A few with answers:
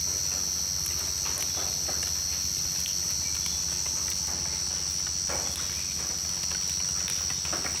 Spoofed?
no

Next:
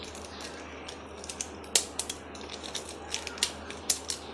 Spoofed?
no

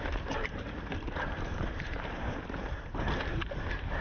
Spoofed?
yes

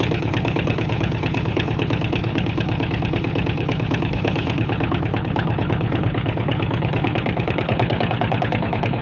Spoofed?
yes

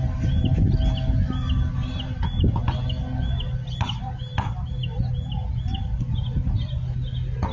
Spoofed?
no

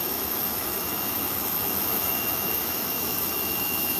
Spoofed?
yes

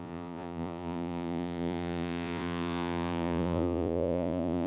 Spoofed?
yes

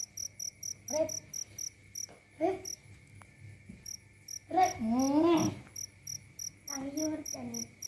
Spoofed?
no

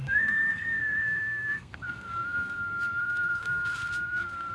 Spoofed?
yes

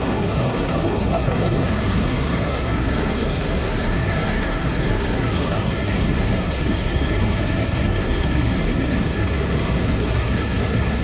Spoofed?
yes